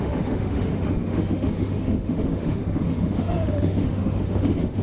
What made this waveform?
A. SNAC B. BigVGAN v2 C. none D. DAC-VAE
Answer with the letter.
D